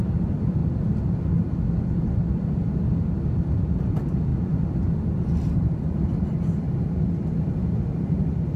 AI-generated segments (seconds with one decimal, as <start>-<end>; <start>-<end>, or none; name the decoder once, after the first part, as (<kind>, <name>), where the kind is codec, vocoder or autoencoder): none